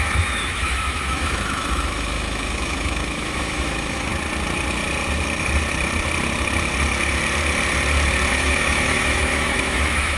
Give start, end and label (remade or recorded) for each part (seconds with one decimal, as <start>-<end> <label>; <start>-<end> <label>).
0.0-4.1 remade; 4.1-8.3 recorded; 8.3-10.2 remade